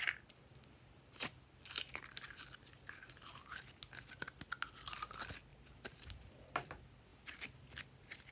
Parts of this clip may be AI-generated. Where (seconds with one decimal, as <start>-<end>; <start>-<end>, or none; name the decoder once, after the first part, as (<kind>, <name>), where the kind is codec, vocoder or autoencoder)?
5.5-6.3 (vocoder, BigVGAN v2)